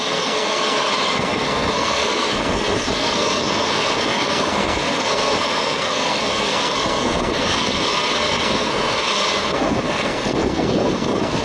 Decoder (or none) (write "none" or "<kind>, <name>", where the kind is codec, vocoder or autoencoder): codec, SNAC